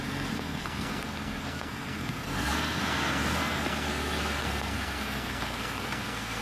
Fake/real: fake